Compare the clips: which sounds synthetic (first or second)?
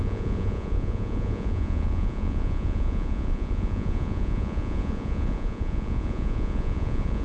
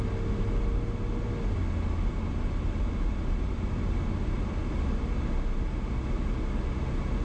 first